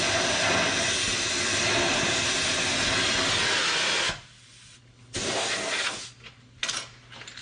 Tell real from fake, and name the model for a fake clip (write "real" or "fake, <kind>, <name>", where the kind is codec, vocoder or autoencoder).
real